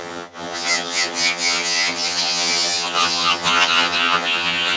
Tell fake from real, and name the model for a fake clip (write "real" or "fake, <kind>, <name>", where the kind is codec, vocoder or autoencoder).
fake, vocoder, HiFi-GAN